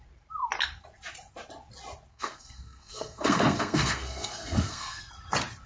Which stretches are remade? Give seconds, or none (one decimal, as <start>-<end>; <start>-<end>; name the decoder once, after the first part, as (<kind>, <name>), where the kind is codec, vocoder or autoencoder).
2.1-5.1 (codec, SNAC)